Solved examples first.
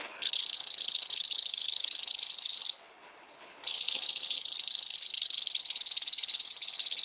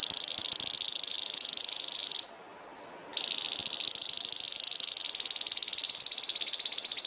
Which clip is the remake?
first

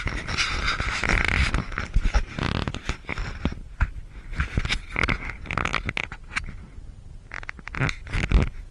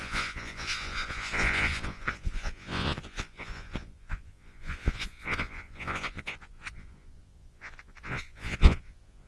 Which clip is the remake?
second